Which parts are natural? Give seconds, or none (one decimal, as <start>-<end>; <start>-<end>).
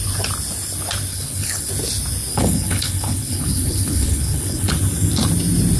0.0-1.1; 1.7-2.3; 4.7-5.8